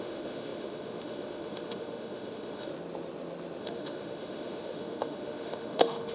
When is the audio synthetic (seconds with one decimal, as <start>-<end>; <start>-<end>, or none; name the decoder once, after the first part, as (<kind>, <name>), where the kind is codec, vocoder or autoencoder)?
0.0-2.7 (autoencoder, DAC-VAE); 3.6-6.1